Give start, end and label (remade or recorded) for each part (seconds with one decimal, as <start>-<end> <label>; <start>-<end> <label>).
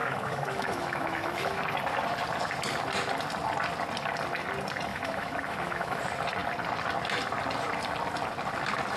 0.0-1.6 remade; 1.6-4.9 recorded; 4.9-6.0 remade; 6.0-9.0 recorded